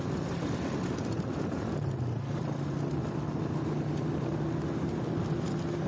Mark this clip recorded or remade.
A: recorded